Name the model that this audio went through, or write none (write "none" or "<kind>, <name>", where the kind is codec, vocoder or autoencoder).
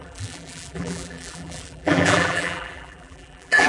vocoder, BigVGAN v2